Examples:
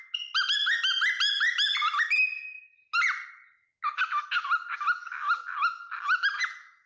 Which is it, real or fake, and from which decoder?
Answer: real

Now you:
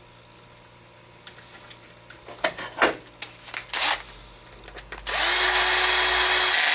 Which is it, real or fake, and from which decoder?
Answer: real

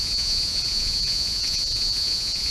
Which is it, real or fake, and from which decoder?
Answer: fake, vocoder, Vocos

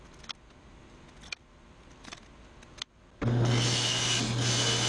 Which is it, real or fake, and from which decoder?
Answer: real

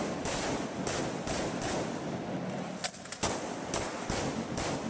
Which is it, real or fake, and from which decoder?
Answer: real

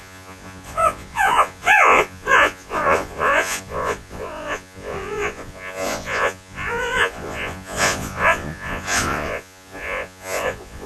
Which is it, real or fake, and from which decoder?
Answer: fake, vocoder, Vocos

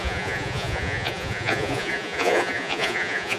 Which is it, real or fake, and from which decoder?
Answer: fake, vocoder, Vocos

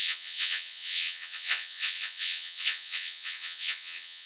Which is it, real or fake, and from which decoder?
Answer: fake, vocoder, Vocos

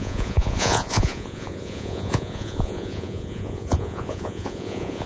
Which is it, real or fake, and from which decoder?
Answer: fake, vocoder, Vocos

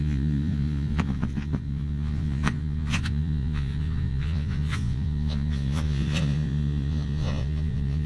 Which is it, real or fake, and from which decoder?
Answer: fake, vocoder, Vocos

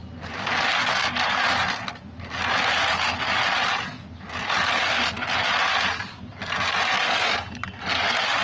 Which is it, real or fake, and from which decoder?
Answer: real